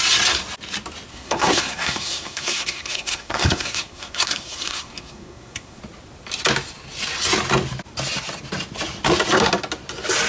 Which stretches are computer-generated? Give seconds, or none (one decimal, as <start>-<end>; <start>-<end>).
1.1-5.8